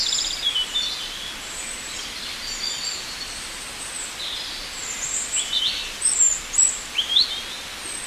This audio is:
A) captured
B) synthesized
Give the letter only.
A